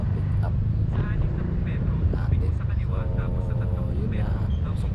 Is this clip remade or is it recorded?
remade